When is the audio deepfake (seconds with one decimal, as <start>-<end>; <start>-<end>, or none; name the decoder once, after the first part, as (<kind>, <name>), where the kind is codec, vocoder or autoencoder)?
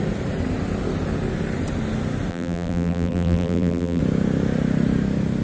2.3-4.0 (vocoder, BigVGAN v2)